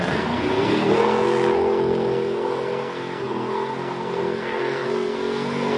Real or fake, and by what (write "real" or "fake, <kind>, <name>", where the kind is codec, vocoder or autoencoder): fake, codec, SNAC